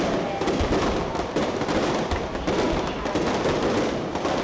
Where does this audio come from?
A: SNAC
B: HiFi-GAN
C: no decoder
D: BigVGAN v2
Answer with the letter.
C